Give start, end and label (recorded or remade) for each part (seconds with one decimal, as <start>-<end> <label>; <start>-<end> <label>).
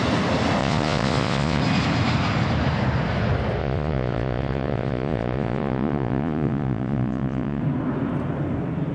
0.0-0.6 recorded; 0.6-1.6 remade; 1.6-3.6 recorded; 3.6-7.6 remade; 7.6-8.9 recorded